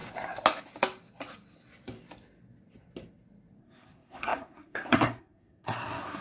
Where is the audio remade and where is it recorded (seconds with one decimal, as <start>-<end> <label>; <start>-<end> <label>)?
0.0-3.6 recorded; 3.6-6.2 remade